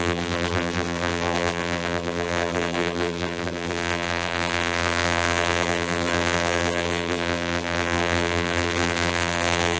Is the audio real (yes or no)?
no